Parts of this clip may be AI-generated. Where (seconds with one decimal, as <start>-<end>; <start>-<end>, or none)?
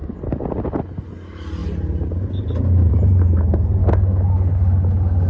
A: 3.8-5.3